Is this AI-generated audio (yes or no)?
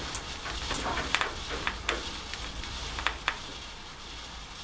no